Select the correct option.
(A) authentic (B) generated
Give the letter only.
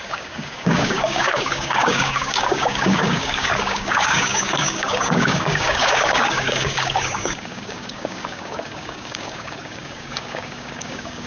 B